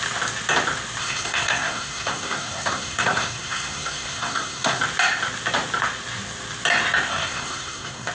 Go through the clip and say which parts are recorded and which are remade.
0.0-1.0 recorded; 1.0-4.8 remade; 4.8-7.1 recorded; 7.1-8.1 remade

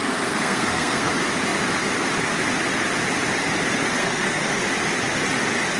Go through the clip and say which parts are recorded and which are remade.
0.0-1.1 remade; 1.1-4.0 recorded; 4.0-4.6 remade; 4.6-5.8 recorded

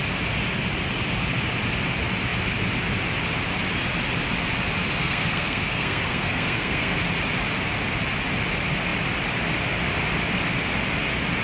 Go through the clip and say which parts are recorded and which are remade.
0.0-5.0 recorded; 5.0-7.0 remade; 7.0-11.4 recorded

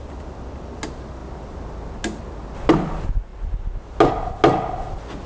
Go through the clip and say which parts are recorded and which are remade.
0.0-5.3 recorded

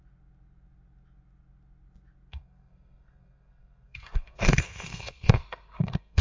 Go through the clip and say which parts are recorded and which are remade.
0.0-2.3 recorded; 2.3-6.2 remade

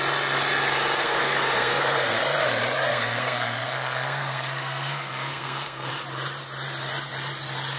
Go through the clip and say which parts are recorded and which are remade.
0.0-1.0 recorded; 1.0-2.2 remade; 2.2-2.9 recorded; 2.9-5.9 remade; 5.9-7.8 recorded

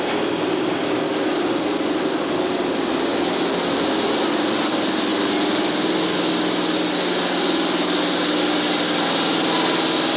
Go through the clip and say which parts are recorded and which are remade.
0.0-10.2 recorded

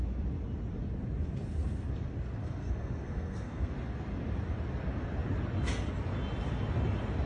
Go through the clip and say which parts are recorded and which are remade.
0.0-2.4 recorded; 2.4-3.7 remade; 3.7-7.3 recorded